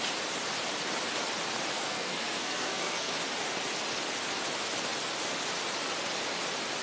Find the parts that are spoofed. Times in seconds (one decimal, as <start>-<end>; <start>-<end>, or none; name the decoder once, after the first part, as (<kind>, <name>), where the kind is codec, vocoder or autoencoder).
1.7-3.1 (codec, SNAC)